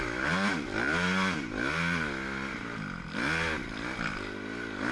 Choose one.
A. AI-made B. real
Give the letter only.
B